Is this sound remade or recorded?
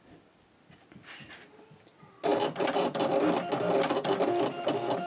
recorded